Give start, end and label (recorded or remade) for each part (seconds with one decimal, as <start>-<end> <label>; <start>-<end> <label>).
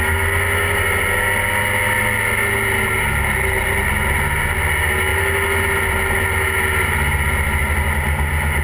0.0-8.6 recorded